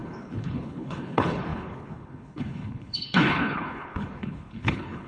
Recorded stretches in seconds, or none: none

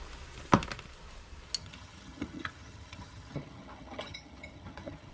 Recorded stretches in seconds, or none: 0.0-1.6

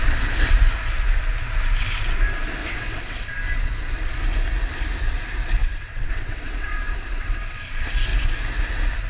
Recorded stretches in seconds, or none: 0.0-2.6; 3.3-5.6; 7.6-9.1

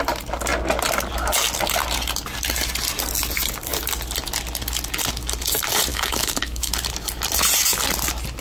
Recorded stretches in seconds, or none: 0.0-5.9; 6.7-8.4

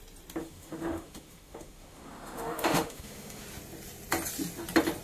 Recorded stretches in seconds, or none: 0.0-0.4; 3.4-5.0

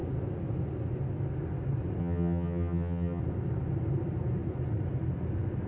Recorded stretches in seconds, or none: 0.0-2.0; 3.2-5.7

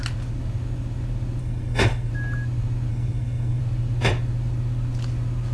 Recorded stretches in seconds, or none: 0.0-1.4; 2.1-2.9; 3.6-5.5